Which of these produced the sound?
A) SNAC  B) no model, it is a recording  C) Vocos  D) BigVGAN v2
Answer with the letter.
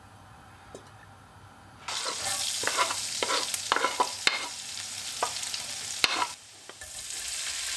B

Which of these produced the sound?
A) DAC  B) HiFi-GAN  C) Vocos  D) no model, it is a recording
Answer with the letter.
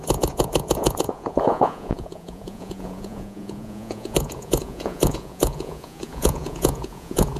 C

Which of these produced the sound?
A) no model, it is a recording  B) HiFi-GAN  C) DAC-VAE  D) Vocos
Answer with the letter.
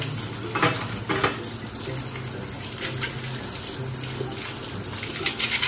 A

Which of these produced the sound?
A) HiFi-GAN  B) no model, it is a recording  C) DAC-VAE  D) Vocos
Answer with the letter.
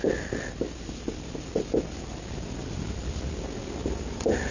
B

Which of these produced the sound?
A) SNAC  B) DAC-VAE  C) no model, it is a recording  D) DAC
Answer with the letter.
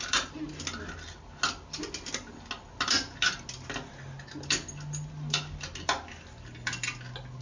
C